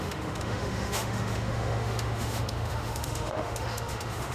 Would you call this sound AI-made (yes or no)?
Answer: yes